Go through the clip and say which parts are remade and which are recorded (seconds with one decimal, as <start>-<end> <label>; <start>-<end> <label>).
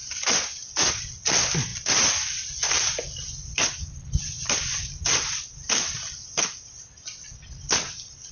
0.0-8.3 recorded